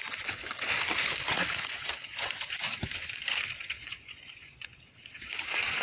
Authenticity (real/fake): fake